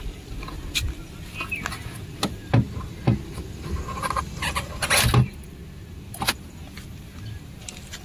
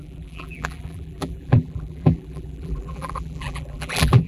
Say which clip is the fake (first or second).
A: second